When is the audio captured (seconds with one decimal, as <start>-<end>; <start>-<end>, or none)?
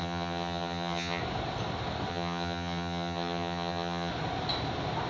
1.2-2.1; 4.1-5.1